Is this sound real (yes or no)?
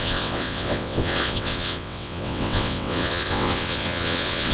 no